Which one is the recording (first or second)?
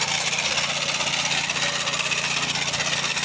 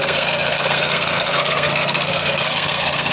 first